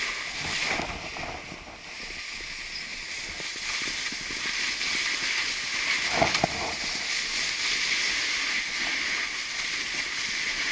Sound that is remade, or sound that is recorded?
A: recorded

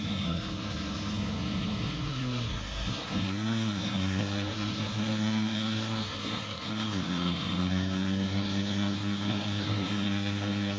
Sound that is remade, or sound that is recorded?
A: remade